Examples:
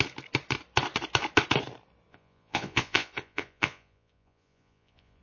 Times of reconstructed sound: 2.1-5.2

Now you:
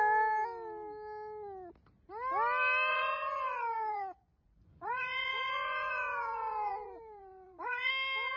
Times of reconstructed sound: 2.9-7.9

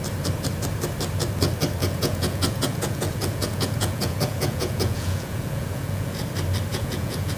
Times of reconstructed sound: 1.8-6.2; 6.7-7.4

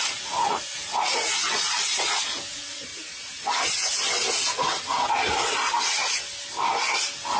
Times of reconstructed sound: 0.0-2.9